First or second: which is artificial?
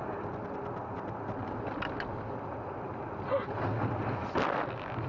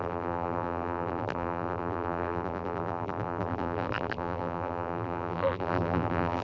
second